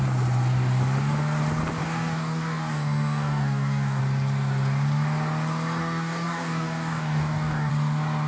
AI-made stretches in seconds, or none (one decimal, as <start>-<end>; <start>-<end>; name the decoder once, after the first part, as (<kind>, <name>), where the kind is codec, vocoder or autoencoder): 1.8-4.0 (codec, DAC); 5.8-7.7